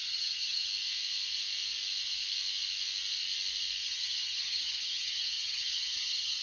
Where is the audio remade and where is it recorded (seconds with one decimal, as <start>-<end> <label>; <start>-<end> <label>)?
0.0-0.7 remade; 0.7-3.8 recorded; 3.8-6.4 remade